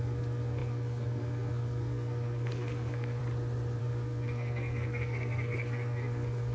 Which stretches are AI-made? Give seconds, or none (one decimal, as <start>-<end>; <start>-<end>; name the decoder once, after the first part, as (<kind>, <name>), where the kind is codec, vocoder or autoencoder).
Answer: 0.0-3.2 (codec, SNAC); 3.8-6.5